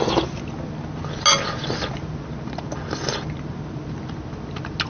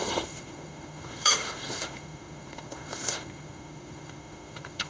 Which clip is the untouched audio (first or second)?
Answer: first